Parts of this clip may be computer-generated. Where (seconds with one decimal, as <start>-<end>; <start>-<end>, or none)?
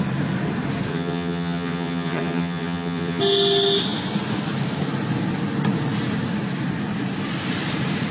0.9-3.2